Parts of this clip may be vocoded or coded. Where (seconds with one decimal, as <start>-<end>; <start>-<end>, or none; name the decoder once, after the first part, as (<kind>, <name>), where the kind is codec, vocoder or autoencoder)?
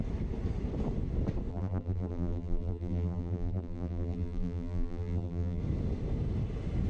1.5-5.6 (vocoder, BigVGAN v2)